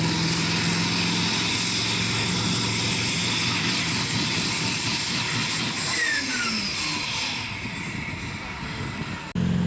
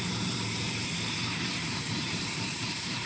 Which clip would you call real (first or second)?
first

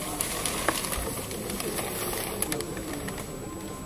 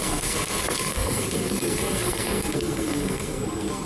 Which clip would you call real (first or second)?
first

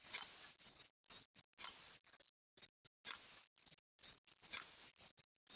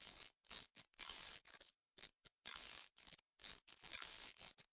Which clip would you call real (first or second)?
first